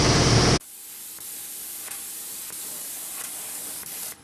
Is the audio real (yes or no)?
yes